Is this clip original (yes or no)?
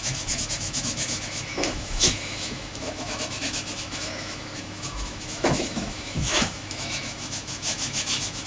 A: no